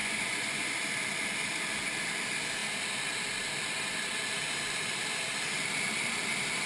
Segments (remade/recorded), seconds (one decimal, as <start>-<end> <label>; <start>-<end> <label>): 0.0-0.7 remade; 0.7-6.7 recorded